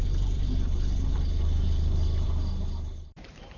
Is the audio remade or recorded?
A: remade